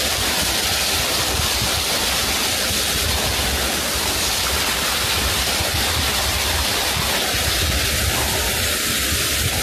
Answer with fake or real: real